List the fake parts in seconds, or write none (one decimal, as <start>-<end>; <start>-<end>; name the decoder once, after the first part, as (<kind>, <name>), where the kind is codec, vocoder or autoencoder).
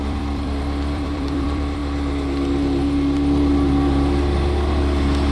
0.0-1.8 (vocoder, BigVGAN v2)